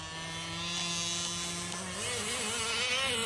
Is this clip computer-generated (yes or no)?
no